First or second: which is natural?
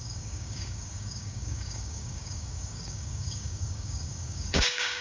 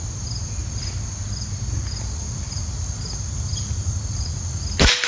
second